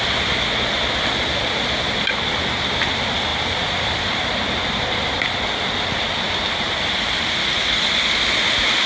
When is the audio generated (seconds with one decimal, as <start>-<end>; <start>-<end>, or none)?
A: none